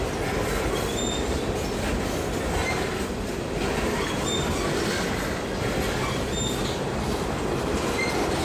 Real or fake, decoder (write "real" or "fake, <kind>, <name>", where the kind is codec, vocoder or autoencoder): real